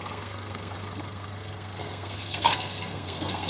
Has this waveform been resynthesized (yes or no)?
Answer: yes